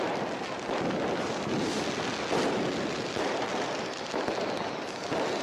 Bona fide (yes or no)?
yes